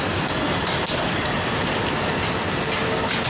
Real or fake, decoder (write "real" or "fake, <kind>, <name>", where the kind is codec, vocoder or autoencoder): real